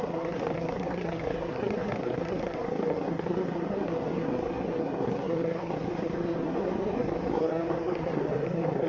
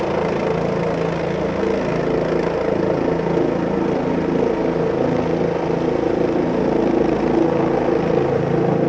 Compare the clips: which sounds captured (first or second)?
second